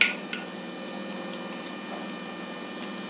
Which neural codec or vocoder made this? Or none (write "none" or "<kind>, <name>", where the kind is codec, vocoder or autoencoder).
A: none